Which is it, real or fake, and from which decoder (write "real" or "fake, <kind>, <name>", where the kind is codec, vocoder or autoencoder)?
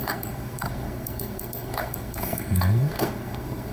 fake, codec, SNAC